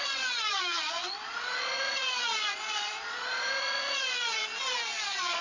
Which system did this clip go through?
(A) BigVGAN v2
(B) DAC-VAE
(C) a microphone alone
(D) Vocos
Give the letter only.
D